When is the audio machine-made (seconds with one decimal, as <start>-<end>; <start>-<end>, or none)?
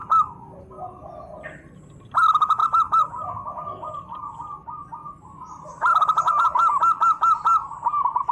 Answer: 2.6-3.2